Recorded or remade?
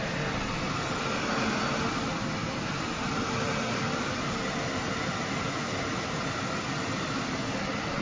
recorded